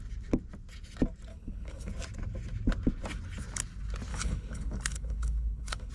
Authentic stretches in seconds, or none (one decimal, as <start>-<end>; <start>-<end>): 0.0-1.3; 1.9-4.1